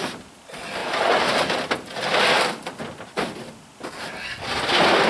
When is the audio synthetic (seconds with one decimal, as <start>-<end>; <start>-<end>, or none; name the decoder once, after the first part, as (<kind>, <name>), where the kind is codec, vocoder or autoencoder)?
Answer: none

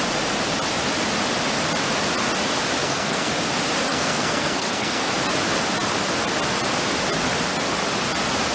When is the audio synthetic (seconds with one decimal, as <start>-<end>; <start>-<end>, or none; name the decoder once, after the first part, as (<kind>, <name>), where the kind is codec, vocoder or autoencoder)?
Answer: 2.8-3.3 (codec, SNAC); 3.9-5.1

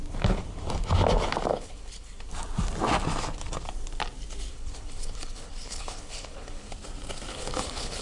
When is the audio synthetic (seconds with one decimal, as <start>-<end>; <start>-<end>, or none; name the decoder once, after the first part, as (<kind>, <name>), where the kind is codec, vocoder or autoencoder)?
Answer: 1.5-2.3 (codec, HILCodec); 4.5-6.7; 7.3-8.0

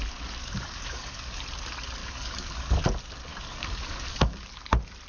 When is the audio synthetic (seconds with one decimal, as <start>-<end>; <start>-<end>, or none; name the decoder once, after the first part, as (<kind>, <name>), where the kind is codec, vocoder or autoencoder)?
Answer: 0.4-1.4 (codec, DAC); 2.0-2.8; 3.3-4.5

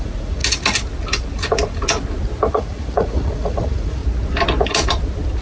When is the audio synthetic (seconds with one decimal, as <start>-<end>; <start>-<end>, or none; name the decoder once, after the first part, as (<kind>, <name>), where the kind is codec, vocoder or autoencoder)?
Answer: 0.0-0.4 (vocoder, Vocos); 2.5-4.0

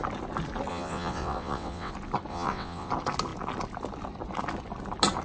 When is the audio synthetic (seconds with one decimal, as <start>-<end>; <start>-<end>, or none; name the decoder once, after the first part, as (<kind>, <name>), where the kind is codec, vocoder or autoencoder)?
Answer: 0.7-1.9 (vocoder, WaveNeXt); 2.3-2.9

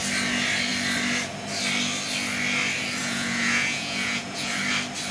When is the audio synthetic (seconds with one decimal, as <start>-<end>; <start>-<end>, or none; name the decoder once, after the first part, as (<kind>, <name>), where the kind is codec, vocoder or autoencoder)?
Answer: 3.0-4.6 (vocoder, Vocos)

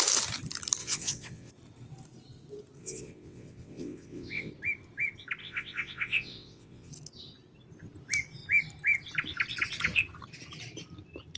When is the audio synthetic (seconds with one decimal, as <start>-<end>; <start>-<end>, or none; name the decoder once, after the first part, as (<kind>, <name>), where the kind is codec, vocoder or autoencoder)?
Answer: 0.8-1.5 (vocoder, WaveNeXt); 2.8-4.5; 5.4-6.9